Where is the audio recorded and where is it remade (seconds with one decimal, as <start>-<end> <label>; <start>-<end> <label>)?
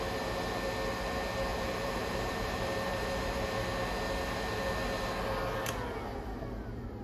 0.0-1.5 recorded; 1.5-3.4 remade; 3.4-7.0 recorded